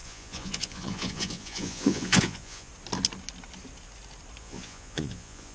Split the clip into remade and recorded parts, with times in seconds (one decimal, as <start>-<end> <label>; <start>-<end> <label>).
0.0-2.7 remade; 2.7-4.4 recorded; 4.4-5.5 remade